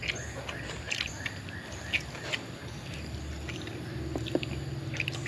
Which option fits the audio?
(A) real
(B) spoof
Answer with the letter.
A